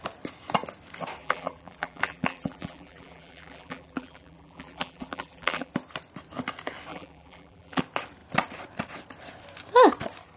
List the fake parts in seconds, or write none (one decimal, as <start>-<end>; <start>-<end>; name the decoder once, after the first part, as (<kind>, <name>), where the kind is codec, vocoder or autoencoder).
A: 1.2-5.7 (vocoder, BigVGAN v2); 6.9-7.8

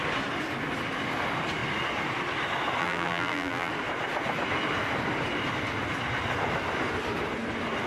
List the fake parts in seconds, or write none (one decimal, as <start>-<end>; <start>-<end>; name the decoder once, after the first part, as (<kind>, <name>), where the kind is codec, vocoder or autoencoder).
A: 2.8-3.7 (vocoder, BigVGAN v2)

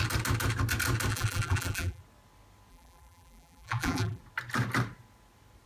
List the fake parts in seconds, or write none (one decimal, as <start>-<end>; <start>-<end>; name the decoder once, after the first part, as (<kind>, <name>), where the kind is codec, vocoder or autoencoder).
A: 1.1-2.0 (vocoder, BigVGAN v2); 2.7-4.2

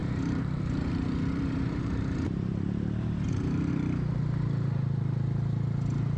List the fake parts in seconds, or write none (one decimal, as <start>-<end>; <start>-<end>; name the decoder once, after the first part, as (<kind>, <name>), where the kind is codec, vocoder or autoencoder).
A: 0.0-3.7 (vocoder, BigVGAN v2)

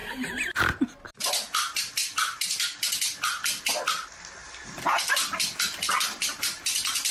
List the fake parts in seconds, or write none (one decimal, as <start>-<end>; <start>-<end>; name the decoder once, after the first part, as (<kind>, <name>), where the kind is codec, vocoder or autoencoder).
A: 0.0-0.5 (vocoder, BigVGAN v2)

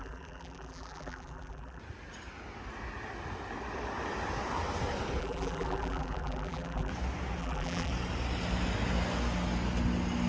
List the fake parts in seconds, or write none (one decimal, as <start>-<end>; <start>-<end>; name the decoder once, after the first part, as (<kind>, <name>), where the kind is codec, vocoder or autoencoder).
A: 0.0-1.8 (vocoder, BigVGAN v2); 5.2-6.9; 7.4-7.9

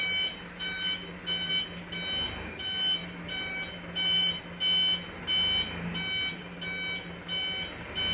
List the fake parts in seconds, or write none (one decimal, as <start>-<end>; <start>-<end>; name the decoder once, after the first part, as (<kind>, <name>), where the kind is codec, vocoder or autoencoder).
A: 0.0-1.5 (vocoder, BigVGAN v2); 3.0-4.4